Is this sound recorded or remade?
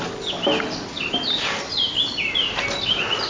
recorded